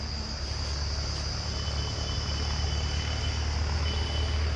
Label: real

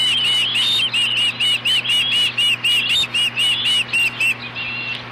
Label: real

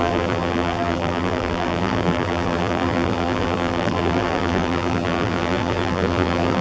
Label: fake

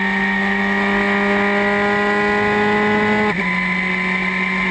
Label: real